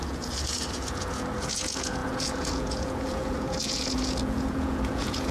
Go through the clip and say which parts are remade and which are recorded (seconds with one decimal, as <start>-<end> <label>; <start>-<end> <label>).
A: 0.0-5.3 remade

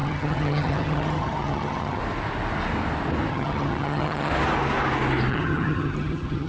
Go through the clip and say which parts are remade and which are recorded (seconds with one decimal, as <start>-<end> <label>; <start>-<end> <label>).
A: 0.0-2.0 remade; 2.0-3.3 recorded; 3.3-4.3 remade; 4.3-5.3 recorded; 5.3-6.5 remade

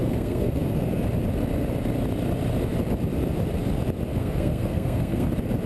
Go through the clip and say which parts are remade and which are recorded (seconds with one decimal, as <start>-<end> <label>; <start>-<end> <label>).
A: 0.0-0.8 remade; 0.8-4.2 recorded; 4.2-5.3 remade; 5.3-5.7 recorded

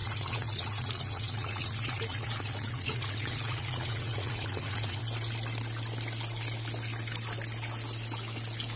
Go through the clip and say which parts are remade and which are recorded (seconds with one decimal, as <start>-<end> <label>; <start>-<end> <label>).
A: 0.0-5.0 remade; 5.0-8.8 recorded